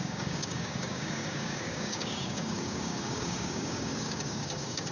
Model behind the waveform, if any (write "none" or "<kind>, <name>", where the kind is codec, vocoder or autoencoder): codec, DAC